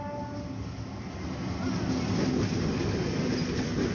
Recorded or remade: recorded